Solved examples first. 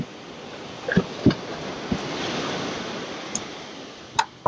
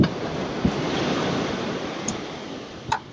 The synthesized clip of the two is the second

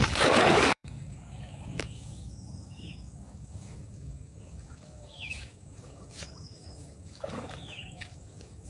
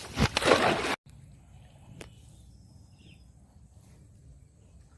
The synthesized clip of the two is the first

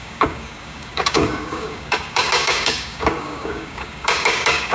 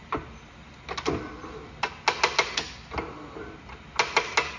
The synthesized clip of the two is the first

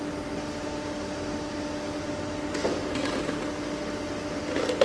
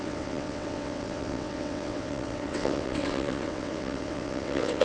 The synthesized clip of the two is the second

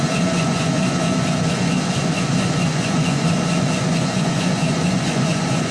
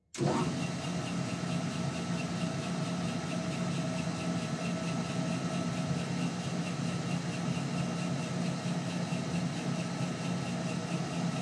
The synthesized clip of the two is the first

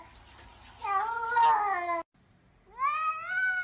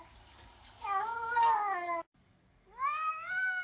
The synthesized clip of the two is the second